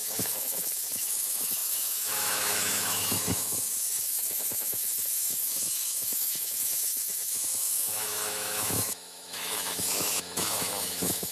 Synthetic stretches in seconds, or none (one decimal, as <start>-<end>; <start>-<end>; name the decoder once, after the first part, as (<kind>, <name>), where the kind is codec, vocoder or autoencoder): 0.0-11.3 (autoencoder, DAC-VAE)